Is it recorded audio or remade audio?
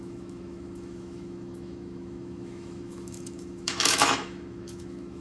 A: remade